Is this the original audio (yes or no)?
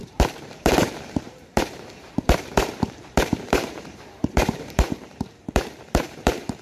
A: no